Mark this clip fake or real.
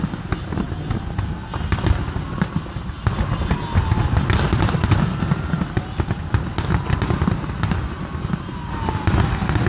real